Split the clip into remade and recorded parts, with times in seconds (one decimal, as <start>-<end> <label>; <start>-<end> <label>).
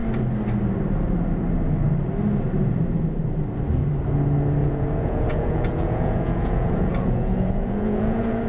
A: 0.0-4.6 recorded; 4.6-8.5 remade